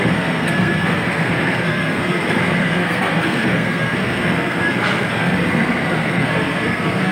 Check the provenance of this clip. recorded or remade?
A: remade